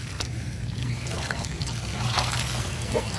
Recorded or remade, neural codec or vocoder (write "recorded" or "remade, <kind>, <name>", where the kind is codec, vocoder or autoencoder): remade, codec, SNAC